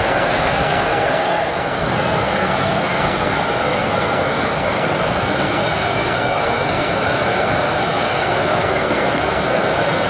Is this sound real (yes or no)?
no